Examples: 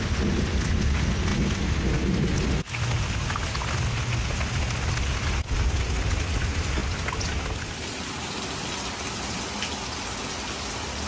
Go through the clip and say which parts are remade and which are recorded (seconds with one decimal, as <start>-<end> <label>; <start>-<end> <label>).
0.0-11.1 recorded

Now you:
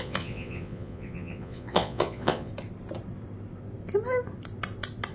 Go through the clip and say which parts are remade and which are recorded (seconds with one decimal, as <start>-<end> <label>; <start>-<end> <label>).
0.0-2.5 remade; 2.5-5.1 recorded

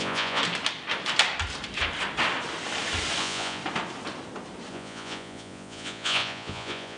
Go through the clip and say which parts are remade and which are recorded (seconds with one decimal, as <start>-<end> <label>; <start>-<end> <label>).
0.0-0.4 remade; 0.4-3.2 recorded; 3.2-3.6 remade; 3.6-4.7 recorded; 4.7-7.0 remade